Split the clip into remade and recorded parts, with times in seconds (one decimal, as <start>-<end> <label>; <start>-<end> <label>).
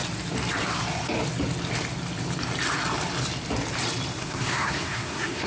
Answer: 0.0-4.2 recorded; 4.2-5.5 remade